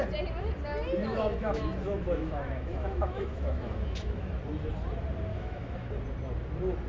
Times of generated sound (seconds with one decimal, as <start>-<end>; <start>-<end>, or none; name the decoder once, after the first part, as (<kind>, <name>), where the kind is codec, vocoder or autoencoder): 1.0-4.3 (autoencoder, DAC-VAE); 5.3-5.9